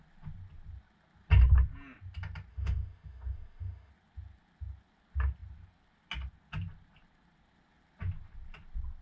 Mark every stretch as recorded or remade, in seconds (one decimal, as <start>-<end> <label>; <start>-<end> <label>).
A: 0.0-2.5 recorded; 2.5-3.9 remade; 3.9-9.0 recorded

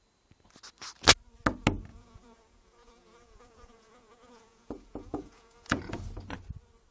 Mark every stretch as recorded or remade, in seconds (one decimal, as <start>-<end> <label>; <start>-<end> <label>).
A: 0.0-1.9 recorded; 1.9-6.0 remade; 6.0-6.9 recorded

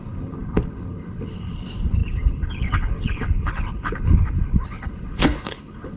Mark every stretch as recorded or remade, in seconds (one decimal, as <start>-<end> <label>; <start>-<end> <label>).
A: 0.0-6.0 remade

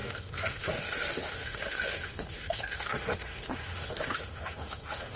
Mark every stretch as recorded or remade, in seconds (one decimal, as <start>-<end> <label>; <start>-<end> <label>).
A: 0.0-5.2 remade